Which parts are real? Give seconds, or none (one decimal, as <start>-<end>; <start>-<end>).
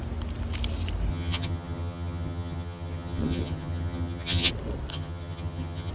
0.0-1.1; 4.5-4.9